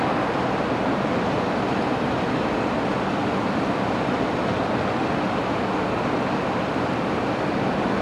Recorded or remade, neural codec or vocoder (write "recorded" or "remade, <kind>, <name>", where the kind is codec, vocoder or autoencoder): recorded